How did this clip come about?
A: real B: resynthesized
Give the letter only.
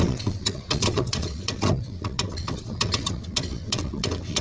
B